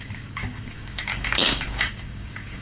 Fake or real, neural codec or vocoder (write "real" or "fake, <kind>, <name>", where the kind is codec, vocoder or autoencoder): fake, codec, DAC